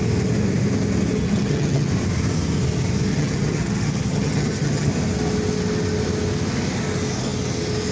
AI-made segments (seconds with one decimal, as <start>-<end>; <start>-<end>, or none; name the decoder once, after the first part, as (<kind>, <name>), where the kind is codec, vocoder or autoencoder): 1.1-1.9 (vocoder, HiFi-GAN); 3.1-4.9